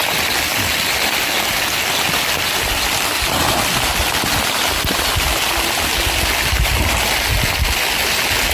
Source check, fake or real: real